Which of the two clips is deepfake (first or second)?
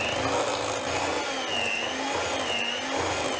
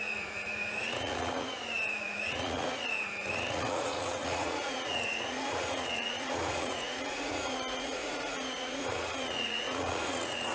second